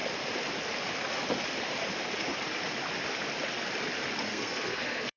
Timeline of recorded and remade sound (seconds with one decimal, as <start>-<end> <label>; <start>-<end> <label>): 0.0-4.3 recorded; 4.3-5.2 remade